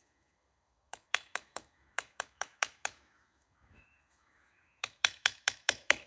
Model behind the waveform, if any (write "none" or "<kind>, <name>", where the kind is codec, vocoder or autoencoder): autoencoder, DAC-VAE